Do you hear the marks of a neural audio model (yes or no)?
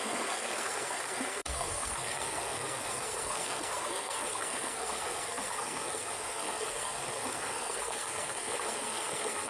yes